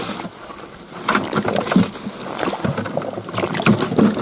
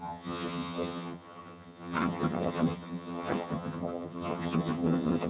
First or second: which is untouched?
first